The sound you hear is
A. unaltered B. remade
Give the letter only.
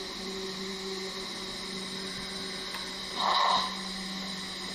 A